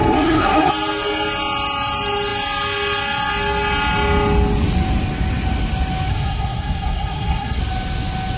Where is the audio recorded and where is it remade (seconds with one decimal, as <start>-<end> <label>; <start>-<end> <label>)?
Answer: 0.0-0.7 remade; 0.7-6.1 recorded; 6.1-7.6 remade; 7.6-8.4 recorded